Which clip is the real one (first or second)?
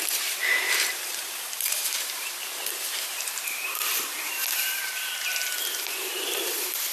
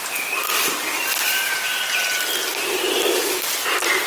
second